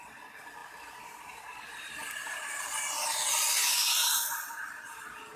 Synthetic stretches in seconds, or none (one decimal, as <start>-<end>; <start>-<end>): 0.6-1.6; 4.0-5.4